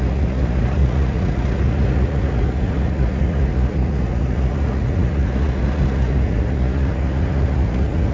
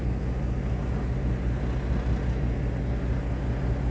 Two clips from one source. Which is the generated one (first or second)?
first